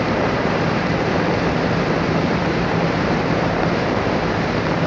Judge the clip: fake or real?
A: fake